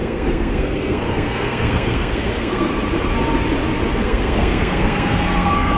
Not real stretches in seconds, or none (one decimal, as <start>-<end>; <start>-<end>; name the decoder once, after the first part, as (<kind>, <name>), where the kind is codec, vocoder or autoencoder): 0.0-2.7 (codec, SNAC); 3.9-5.8